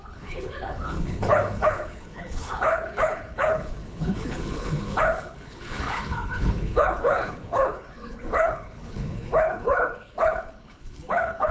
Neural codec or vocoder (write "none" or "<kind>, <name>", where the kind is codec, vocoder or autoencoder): codec, HILCodec